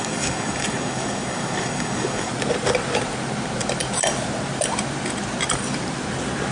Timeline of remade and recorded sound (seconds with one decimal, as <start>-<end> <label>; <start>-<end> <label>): 0.0-2.3 remade; 2.3-6.5 recorded